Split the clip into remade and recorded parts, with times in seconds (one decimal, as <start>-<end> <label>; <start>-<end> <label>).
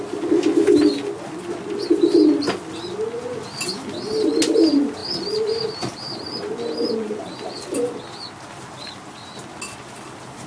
0.0-10.5 recorded